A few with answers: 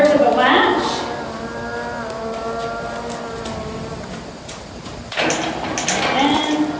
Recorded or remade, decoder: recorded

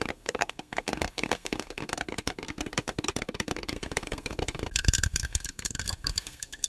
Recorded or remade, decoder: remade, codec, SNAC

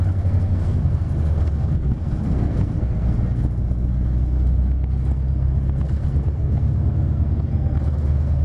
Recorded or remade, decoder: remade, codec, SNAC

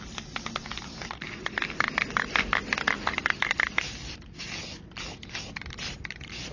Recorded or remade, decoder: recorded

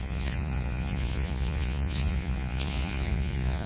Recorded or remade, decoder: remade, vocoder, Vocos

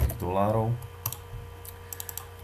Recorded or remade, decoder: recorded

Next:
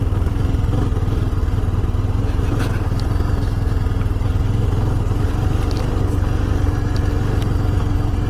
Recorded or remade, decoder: recorded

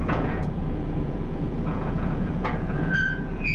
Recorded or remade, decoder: remade, vocoder, Vocos